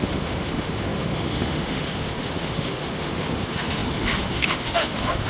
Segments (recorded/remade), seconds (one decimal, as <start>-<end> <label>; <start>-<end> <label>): 0.0-5.3 remade